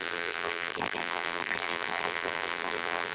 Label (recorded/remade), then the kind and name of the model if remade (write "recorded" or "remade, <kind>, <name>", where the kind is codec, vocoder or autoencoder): remade, vocoder, BigVGAN v2